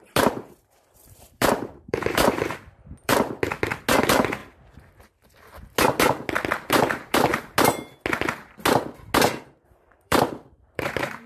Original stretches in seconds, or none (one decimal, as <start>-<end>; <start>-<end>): 3.1-4.0; 4.4-6.7; 7.3-9.3